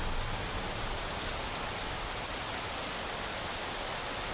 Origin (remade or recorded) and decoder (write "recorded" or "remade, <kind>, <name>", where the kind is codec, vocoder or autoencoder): recorded